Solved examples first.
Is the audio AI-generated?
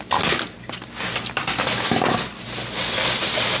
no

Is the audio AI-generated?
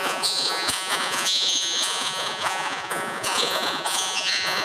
yes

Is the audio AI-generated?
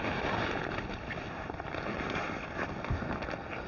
no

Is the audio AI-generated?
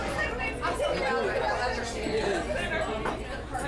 no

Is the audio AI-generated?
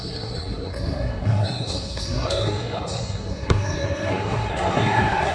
yes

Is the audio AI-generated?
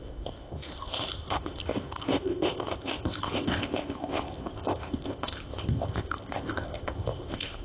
yes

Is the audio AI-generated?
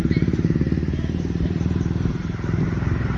yes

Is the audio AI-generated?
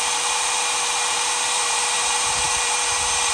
yes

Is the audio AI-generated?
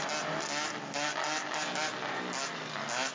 no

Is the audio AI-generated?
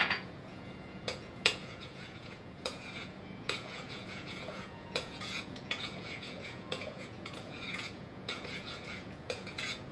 yes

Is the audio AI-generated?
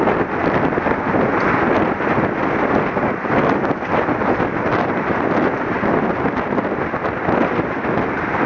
no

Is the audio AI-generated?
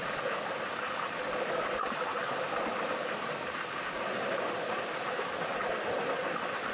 no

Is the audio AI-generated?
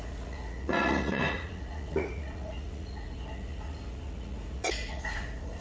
yes